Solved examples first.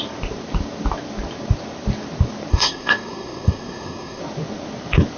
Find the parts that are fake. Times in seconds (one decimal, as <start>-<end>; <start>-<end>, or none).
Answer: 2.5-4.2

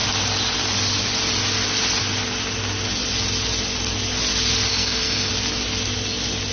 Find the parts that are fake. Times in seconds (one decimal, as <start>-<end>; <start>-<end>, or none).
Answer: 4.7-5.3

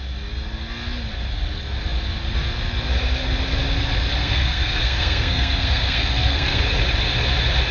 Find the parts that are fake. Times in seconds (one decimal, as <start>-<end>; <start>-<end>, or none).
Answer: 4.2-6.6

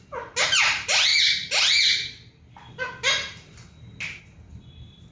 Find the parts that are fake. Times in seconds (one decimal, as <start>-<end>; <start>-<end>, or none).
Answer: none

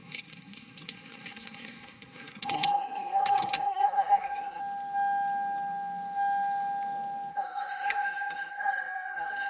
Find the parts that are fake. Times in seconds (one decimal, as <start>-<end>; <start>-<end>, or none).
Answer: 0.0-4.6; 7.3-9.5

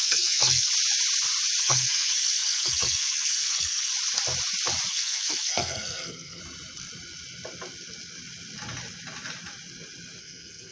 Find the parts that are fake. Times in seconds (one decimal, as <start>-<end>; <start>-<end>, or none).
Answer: 0.0-0.7; 1.6-3.9; 4.9-6.4; 10.2-10.7

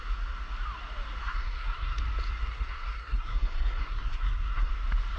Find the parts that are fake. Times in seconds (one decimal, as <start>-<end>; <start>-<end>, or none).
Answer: 1.2-2.0; 2.4-4.7